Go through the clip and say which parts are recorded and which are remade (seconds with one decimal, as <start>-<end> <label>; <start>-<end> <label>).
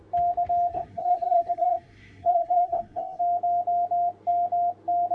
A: 0.0-0.7 recorded; 0.7-3.2 remade; 3.2-5.1 recorded